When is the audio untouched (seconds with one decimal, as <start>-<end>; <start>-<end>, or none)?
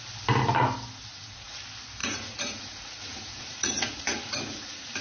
0.0-1.1; 1.6-2.0